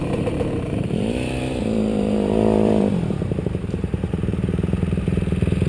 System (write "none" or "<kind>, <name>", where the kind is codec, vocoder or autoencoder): vocoder, BigVGAN v2